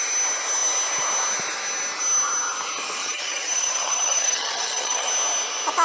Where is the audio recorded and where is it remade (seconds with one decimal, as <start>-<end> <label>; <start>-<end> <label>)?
0.0-3.0 recorded; 3.0-5.1 remade; 5.1-5.8 recorded